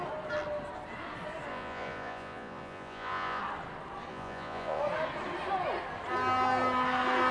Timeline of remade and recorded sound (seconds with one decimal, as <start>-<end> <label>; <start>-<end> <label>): 0.0-1.5 recorded; 1.5-3.4 remade; 3.4-4.1 recorded; 4.1-4.8 remade; 4.8-7.3 recorded